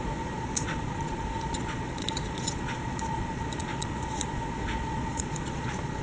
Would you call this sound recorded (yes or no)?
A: no